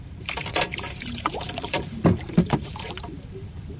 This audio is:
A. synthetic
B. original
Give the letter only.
A